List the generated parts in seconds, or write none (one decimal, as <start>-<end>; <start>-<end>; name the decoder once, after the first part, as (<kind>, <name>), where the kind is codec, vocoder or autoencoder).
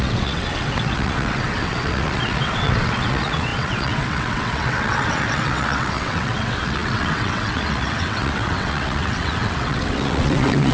0.0-10.7 (vocoder, WaveNeXt)